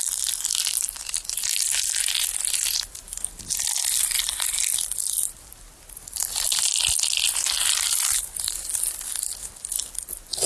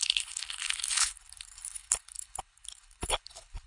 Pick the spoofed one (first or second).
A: second